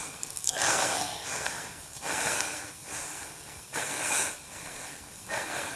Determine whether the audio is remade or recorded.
remade